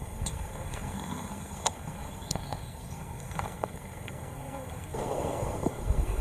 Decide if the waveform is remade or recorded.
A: remade